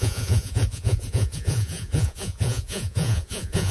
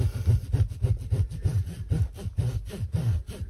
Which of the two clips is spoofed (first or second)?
first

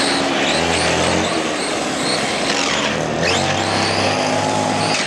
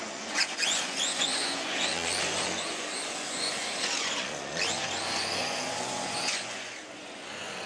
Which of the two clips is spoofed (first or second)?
second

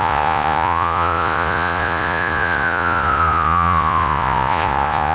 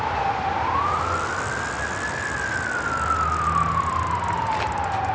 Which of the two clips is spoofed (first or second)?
first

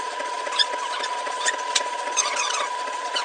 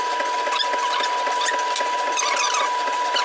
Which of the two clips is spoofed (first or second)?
first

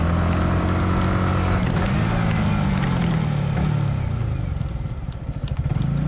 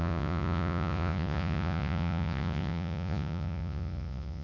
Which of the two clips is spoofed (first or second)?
second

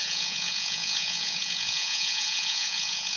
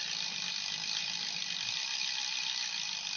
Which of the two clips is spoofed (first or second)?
first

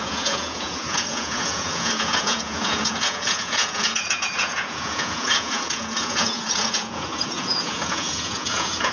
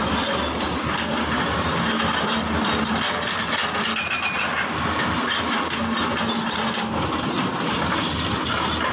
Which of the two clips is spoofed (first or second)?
first